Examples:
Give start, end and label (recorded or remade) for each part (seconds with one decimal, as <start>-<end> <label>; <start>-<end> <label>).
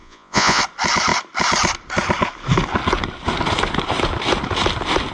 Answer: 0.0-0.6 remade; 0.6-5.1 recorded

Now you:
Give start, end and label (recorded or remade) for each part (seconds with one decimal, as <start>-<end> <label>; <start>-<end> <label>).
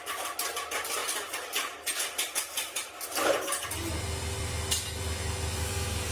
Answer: 0.0-6.1 recorded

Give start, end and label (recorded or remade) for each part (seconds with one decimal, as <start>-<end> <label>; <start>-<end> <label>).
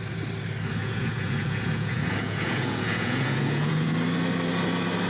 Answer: 0.0-0.8 recorded; 0.8-3.9 remade; 3.9-5.1 recorded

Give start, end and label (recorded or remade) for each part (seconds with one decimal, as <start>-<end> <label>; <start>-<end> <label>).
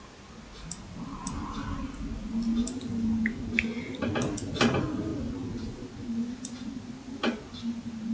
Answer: 0.0-8.1 recorded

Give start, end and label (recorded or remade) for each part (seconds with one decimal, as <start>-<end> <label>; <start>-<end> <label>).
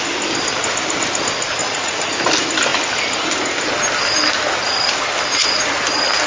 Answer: 0.0-1.6 recorded; 1.6-2.1 remade; 2.1-6.3 recorded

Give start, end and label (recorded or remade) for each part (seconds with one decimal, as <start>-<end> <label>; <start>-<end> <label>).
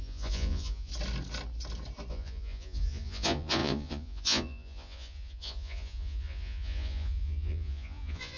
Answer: 0.0-0.9 remade; 0.9-2.1 recorded; 2.1-8.4 remade